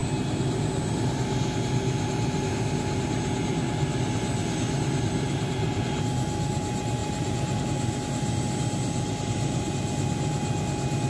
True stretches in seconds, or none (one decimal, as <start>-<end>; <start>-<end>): 0.0-4.4; 5.5-7.0; 7.6-11.1